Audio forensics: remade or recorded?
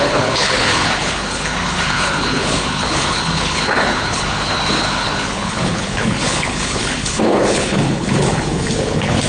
remade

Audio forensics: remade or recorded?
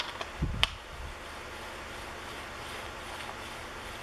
recorded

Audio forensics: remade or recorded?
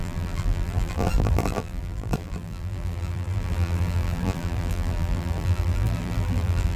remade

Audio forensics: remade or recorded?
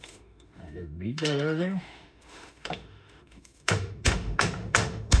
remade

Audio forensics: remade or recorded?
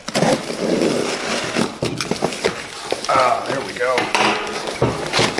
recorded